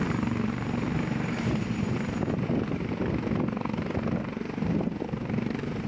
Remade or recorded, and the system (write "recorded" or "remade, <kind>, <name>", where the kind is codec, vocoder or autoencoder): remade, vocoder, BigVGAN v2